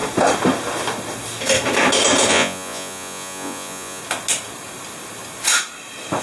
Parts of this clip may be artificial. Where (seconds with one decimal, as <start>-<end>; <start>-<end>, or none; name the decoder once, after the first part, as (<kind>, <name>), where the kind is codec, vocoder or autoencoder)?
2.3-4.0 (vocoder, Vocos)